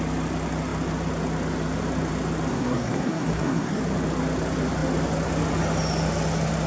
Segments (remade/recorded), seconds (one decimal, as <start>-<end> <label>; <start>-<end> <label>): 0.0-2.5 recorded; 2.5-3.8 remade; 3.8-6.7 recorded